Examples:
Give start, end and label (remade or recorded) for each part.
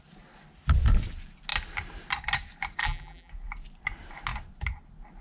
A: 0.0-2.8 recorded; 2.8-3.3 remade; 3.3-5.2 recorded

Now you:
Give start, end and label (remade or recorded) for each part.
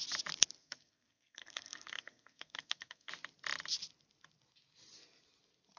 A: 0.0-0.6 recorded; 0.6-3.1 remade; 3.1-5.8 recorded